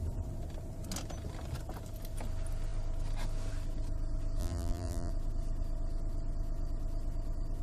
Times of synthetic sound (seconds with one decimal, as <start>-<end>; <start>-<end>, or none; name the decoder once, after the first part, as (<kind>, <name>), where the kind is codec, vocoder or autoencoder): 4.4-5.1 (vocoder, BigVGAN v2)